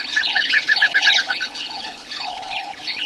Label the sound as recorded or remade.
remade